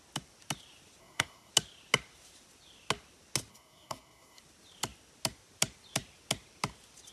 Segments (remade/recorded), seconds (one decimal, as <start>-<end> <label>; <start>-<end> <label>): 0.0-1.0 recorded; 1.0-1.5 remade; 1.5-3.5 recorded; 3.5-4.4 remade; 4.4-7.1 recorded